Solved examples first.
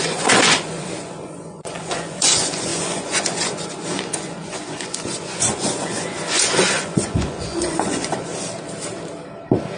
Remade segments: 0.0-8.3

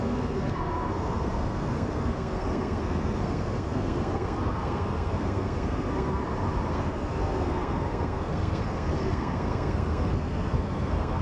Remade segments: 0.0-6.2; 6.7-11.2

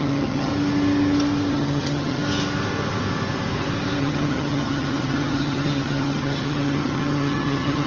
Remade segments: 0.0-0.5; 1.5-2.2; 4.0-7.9

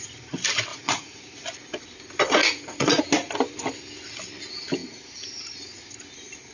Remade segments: 0.7-1.4; 2.4-3.0

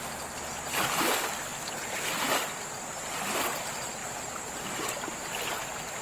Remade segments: 4.0-4.7

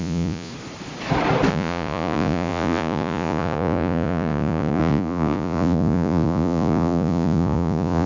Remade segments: 0.0-0.5; 1.5-8.1

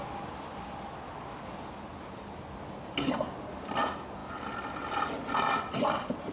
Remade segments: none

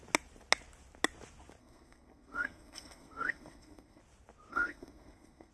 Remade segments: 1.6-4.0; 4.5-5.5